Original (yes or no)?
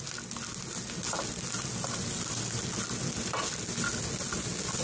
yes